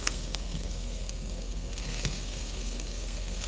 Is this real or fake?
fake